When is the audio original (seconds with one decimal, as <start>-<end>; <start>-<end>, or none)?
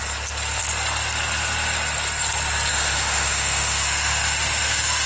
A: 0.0-2.7